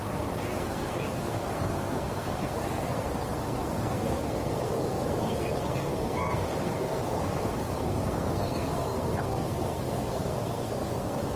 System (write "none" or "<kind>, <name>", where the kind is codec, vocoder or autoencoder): codec, SNAC